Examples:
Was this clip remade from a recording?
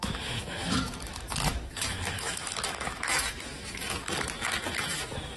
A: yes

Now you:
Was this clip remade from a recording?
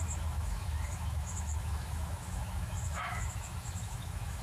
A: yes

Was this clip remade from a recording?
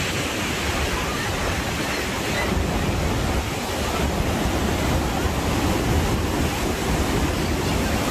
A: no